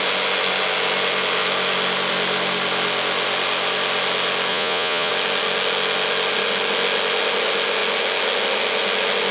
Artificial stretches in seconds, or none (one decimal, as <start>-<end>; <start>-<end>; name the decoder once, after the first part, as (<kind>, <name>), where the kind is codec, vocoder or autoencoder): 4.5-5.1 (vocoder, Vocos)